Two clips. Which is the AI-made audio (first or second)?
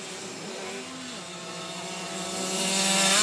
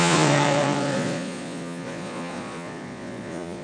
second